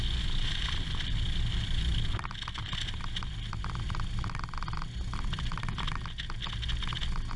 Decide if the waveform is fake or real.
real